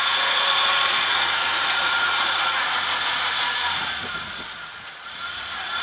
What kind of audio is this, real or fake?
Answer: fake